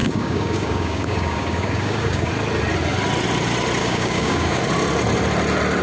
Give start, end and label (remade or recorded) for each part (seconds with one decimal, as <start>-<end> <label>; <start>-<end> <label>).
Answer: 0.0-2.3 remade; 2.3-3.8 recorded; 3.8-4.6 remade; 4.6-5.8 recorded